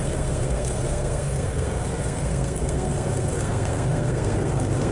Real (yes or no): no